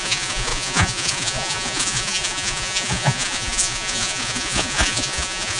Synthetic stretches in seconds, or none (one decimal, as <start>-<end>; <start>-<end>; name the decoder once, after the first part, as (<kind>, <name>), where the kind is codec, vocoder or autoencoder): 0.0-5.6 (vocoder, Vocos)